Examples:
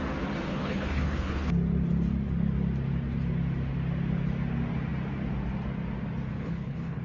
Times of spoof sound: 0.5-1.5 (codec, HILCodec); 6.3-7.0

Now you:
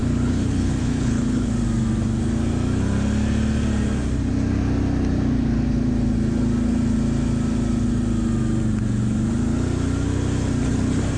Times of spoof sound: 0.0-1.5 (codec, HILCodec)